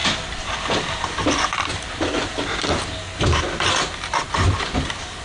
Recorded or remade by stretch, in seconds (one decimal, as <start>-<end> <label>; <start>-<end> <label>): 0.0-2.2 remade; 2.2-5.2 recorded